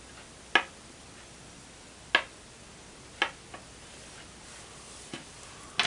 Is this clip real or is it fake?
real